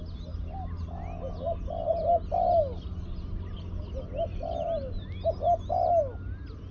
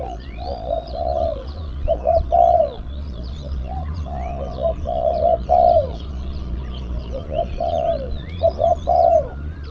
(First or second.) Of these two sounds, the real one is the first